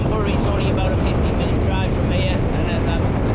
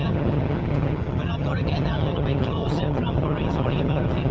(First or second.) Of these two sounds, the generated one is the second